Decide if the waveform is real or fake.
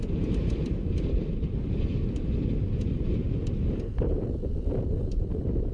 fake